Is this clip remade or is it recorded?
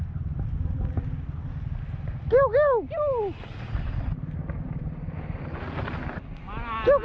recorded